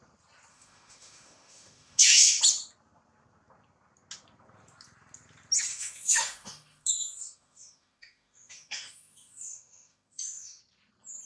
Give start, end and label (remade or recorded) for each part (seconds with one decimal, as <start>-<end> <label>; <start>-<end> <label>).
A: 0.0-0.5 recorded; 0.5-2.4 remade; 2.4-5.7 recorded; 5.7-10.6 remade; 10.6-11.3 recorded